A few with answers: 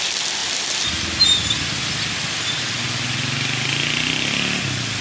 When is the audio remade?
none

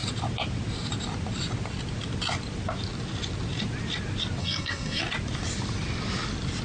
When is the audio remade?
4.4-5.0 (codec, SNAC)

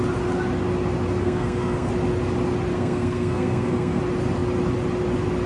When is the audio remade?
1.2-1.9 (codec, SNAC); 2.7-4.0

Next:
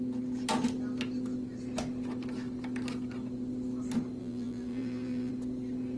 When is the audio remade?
4.2-5.3 (vocoder, BigVGAN v2)